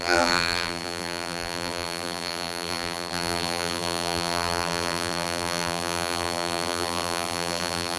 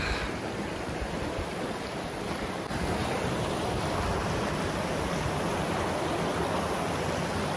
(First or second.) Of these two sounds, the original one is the second